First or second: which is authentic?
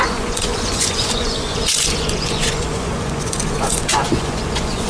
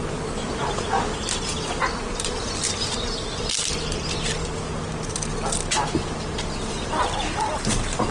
second